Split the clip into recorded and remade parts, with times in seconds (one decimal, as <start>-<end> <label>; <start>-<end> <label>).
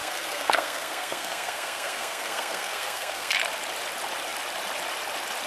0.0-3.3 remade; 3.3-5.5 recorded